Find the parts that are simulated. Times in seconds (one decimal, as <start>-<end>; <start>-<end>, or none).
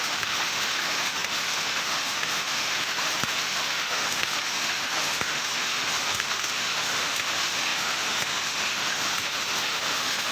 0.0-10.3